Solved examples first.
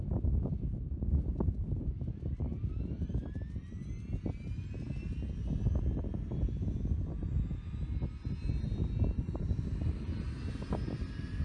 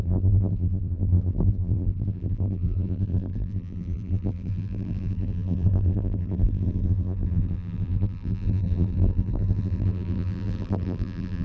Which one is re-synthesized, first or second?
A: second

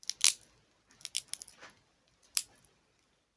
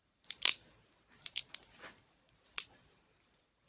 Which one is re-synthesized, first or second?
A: second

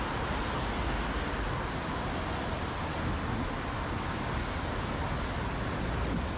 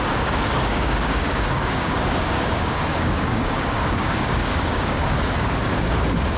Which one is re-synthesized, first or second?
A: second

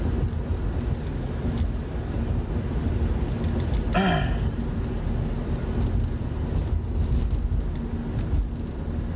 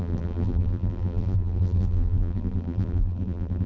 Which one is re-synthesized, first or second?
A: second